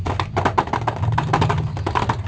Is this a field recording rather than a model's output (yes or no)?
yes